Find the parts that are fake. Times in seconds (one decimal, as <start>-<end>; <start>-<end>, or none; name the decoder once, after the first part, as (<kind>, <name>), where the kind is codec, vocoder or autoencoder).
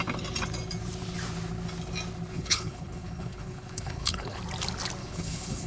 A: 2.3-4.4 (codec, HILCodec); 5.0-5.7